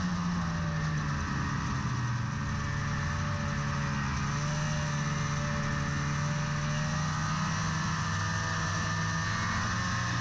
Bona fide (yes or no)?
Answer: yes